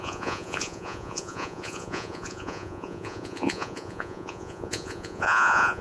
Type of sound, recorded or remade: remade